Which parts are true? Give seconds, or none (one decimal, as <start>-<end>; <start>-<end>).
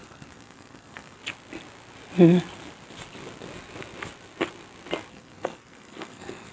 1.2-5.1